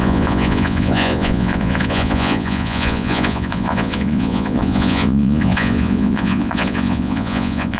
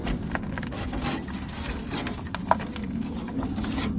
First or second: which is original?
second